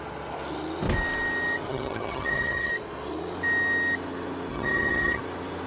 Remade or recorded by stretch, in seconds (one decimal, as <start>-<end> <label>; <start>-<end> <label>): 0.0-1.7 recorded; 1.7-2.7 remade; 2.7-4.5 recorded; 4.5-5.2 remade; 5.2-5.7 recorded